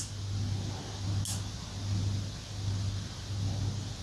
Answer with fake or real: real